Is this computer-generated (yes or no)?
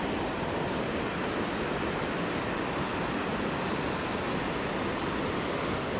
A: no